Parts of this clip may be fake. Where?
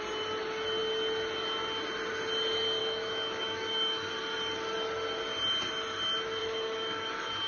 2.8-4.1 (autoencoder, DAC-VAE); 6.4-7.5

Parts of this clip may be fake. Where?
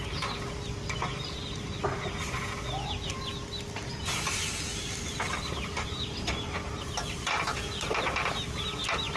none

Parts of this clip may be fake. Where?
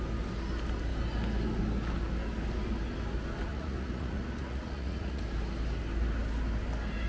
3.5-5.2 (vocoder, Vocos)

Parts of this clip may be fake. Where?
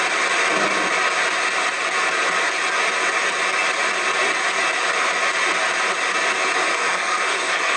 6.7-7.8 (codec, SNAC)